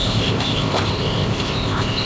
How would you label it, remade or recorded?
remade